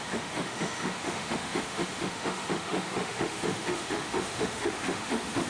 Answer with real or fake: fake